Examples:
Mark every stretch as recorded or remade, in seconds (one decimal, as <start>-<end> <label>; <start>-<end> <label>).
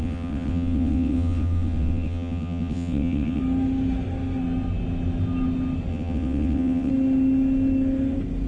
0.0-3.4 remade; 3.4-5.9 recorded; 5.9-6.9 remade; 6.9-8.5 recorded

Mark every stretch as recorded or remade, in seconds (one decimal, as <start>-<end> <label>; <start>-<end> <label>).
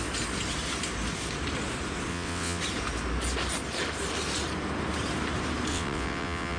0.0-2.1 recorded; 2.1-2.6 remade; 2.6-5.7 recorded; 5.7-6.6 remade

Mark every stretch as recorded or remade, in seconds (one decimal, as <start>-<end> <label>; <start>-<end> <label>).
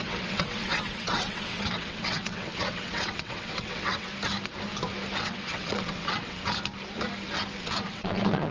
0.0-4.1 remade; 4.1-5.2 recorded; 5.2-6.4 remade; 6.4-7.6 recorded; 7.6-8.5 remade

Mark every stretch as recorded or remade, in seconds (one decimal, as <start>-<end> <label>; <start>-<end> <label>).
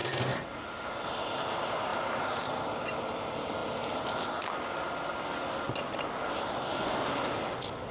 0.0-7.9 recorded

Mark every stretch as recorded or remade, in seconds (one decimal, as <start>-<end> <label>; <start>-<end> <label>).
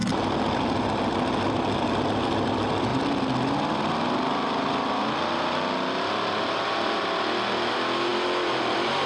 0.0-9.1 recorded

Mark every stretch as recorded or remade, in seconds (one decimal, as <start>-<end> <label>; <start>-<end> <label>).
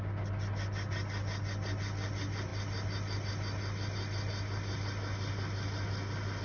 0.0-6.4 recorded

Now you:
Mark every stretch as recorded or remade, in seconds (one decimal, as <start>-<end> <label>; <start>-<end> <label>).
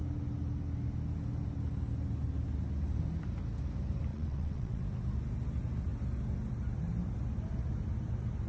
0.0-4.1 recorded; 4.1-4.8 remade; 4.8-8.5 recorded